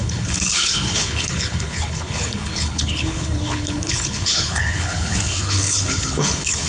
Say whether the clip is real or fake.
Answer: fake